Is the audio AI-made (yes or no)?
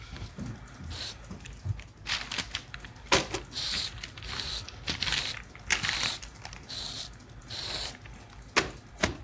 yes